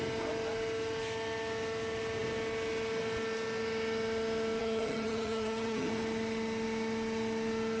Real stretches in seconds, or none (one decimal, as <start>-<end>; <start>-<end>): 0.0-4.6; 5.9-7.8